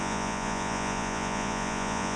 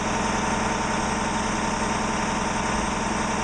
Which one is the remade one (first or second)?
first